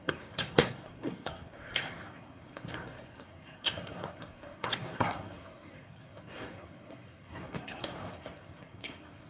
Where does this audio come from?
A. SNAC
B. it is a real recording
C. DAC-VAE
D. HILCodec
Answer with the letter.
A